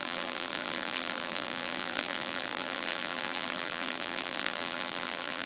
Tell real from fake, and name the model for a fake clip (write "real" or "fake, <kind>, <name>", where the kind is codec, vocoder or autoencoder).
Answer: fake, vocoder, BigVGAN v2